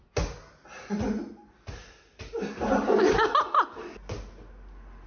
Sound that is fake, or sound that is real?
real